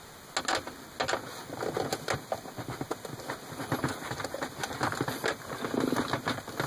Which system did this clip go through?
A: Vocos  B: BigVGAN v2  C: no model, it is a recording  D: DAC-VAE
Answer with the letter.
C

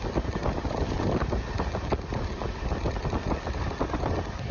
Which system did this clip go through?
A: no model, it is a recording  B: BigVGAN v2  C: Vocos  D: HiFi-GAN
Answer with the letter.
A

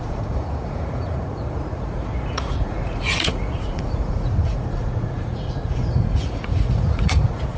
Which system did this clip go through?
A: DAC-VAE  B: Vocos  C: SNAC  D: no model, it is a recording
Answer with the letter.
B